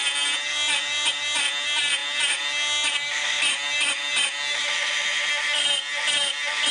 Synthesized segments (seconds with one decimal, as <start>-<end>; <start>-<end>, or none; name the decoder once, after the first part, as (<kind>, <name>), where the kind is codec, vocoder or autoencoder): none